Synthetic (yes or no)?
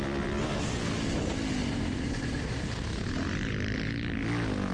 no